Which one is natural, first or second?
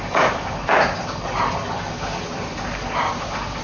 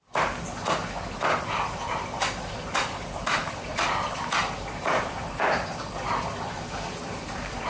first